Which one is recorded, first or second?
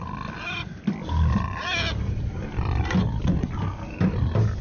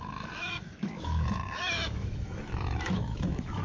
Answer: first